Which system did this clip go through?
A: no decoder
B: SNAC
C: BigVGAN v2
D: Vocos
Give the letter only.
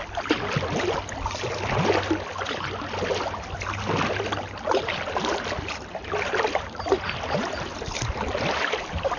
A